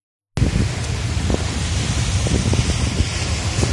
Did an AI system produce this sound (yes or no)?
no